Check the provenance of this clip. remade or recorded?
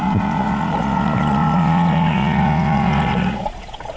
remade